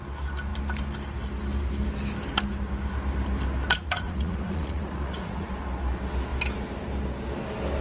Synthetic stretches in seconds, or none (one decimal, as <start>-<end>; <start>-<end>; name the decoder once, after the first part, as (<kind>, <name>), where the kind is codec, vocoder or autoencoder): 3.8-5.5 (vocoder, Vocos)